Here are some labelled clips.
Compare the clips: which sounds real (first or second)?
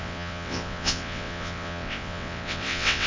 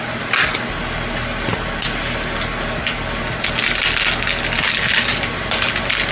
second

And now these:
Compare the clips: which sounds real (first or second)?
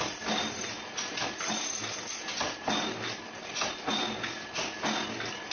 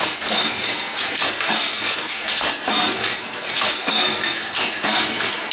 first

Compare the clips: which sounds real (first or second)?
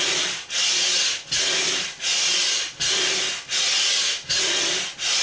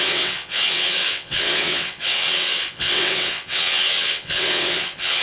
first